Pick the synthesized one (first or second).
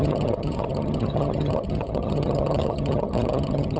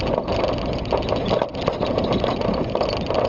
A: first